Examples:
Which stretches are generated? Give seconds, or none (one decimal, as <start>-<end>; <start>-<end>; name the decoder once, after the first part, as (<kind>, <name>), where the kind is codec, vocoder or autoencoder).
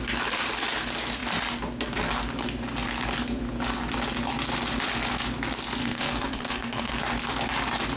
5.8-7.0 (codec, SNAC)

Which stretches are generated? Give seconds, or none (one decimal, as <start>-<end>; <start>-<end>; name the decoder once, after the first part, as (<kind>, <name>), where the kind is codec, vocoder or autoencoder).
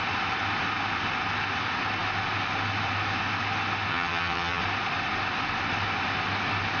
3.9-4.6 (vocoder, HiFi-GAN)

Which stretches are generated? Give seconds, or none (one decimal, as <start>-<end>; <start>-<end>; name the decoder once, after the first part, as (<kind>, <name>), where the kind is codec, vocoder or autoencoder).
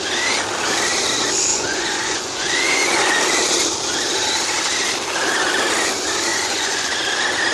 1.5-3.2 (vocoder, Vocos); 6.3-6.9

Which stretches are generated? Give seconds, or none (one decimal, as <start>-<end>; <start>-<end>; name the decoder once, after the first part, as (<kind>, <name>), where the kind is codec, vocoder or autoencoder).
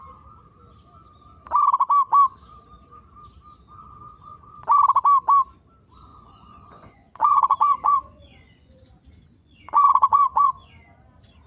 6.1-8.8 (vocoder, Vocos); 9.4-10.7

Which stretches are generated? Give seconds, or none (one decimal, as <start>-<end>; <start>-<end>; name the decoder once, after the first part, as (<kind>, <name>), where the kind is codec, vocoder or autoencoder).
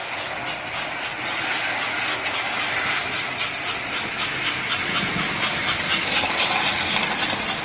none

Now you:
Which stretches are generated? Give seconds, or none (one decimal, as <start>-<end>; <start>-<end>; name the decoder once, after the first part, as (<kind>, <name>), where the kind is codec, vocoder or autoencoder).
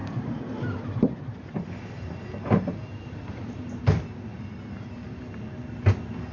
0.0-3.8 (vocoder, BigVGAN v2); 4.3-5.3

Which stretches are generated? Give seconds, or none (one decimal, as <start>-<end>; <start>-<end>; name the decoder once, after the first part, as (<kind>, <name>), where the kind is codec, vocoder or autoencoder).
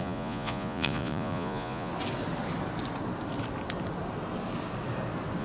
0.0-1.9 (vocoder, Vocos)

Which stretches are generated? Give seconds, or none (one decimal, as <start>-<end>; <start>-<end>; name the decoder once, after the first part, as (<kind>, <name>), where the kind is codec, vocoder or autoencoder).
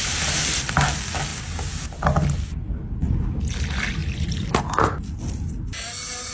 none